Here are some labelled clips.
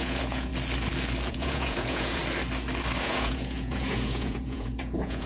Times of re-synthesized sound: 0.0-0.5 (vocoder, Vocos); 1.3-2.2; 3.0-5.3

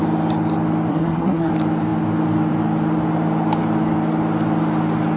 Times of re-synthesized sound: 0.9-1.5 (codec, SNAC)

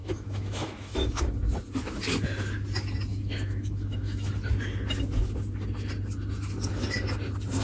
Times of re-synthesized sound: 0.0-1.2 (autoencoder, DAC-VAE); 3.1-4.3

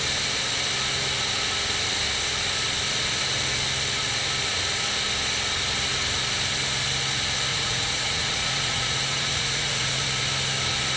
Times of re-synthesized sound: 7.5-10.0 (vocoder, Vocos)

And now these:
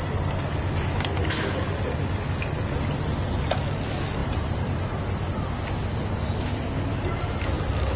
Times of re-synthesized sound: 4.2-5.0 (vocoder, BigVGAN v2)